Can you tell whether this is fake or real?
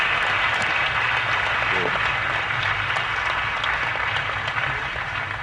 real